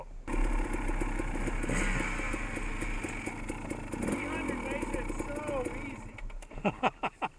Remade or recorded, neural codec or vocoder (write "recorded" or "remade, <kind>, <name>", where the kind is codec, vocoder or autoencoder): recorded